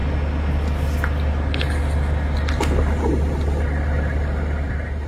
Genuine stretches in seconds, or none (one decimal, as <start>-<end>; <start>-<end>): 0.0-5.1